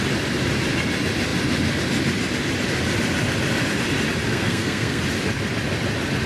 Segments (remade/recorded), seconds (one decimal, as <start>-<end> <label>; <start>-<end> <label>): 0.0-4.3 recorded; 4.3-5.0 remade; 5.0-6.3 recorded